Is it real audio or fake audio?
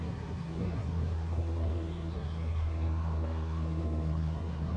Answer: fake